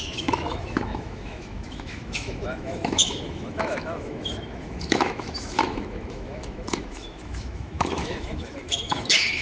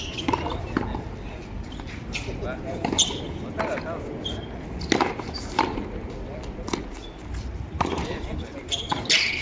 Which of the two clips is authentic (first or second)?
second